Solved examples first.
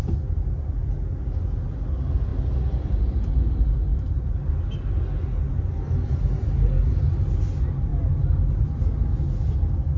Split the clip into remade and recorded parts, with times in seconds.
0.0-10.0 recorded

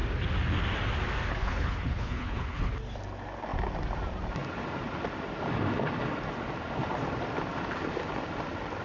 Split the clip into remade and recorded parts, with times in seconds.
0.0-1.3 recorded; 1.3-2.7 remade; 2.7-8.8 recorded